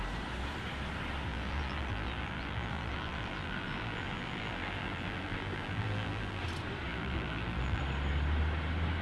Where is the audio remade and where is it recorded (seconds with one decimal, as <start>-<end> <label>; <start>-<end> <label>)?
0.0-1.3 recorded; 1.3-6.4 remade; 6.4-6.9 recorded; 6.9-7.8 remade; 7.8-9.0 recorded